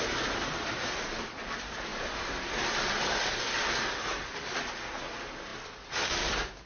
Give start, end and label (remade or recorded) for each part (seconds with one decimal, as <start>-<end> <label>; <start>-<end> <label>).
0.0-6.7 recorded